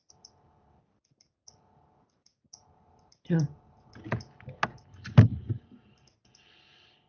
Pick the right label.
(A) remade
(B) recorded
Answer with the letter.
B